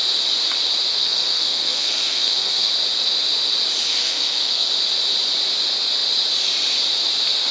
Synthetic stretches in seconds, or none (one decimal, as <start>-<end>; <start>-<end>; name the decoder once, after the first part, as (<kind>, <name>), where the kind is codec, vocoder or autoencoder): 0.9-2.7 (codec, SNAC); 3.9-4.7